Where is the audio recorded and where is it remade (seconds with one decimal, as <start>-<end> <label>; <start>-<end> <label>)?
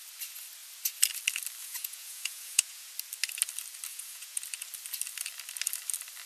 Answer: 0.0-1.6 recorded; 1.6-2.9 remade; 2.9-3.9 recorded; 3.9-4.4 remade; 4.4-6.3 recorded